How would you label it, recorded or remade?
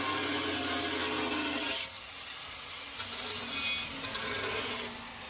recorded